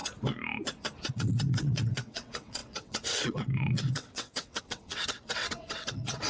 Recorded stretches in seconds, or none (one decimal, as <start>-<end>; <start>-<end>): 0.0-1.1